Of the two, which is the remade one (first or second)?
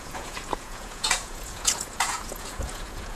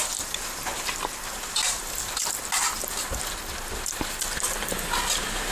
first